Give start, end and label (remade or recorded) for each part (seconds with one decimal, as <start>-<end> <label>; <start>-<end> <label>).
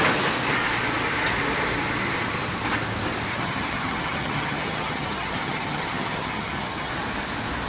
0.0-3.3 recorded; 3.3-6.9 remade; 6.9-7.7 recorded